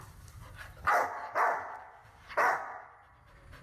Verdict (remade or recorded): recorded